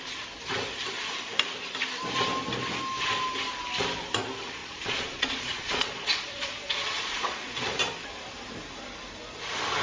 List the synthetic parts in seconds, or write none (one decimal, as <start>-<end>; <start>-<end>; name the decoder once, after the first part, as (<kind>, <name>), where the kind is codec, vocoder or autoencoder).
4.6-7.8 (vocoder, Vocos)